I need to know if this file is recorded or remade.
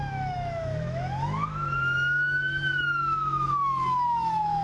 remade